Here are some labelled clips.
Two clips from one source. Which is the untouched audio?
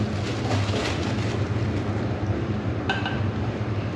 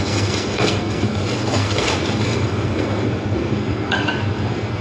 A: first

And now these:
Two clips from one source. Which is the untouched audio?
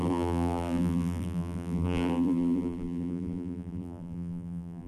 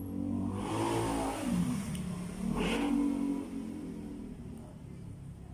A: second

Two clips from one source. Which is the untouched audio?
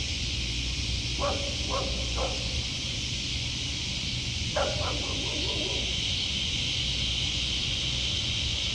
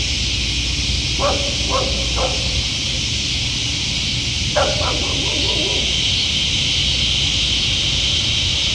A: second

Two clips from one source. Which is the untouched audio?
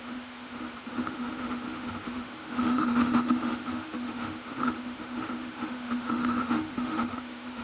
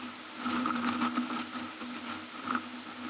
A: second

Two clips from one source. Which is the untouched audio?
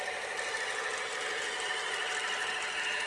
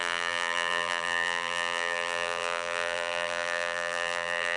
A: first